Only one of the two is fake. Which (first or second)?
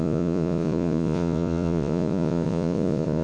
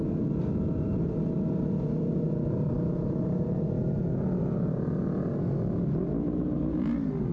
first